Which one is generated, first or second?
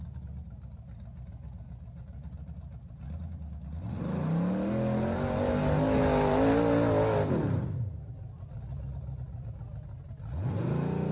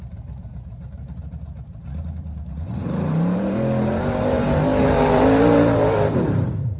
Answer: second